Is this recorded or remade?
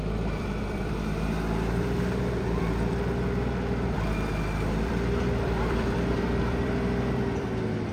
remade